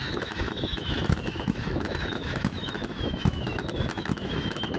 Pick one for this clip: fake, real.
fake